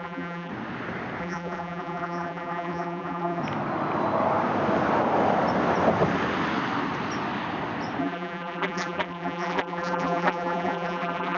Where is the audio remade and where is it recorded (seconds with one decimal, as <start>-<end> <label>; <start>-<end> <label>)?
0.0-0.5 remade; 0.5-1.2 recorded; 1.2-3.4 remade; 3.4-8.0 recorded; 8.0-11.4 remade